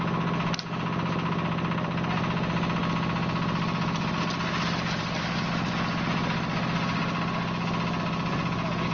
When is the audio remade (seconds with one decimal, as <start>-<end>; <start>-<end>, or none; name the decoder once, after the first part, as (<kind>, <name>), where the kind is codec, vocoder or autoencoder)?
none